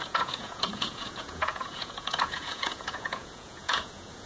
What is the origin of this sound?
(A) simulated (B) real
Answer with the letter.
A